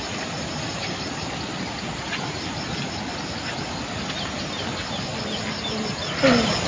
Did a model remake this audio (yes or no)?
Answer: no